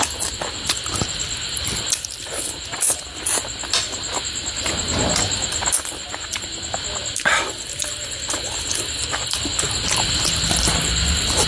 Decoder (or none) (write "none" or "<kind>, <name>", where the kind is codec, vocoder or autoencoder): none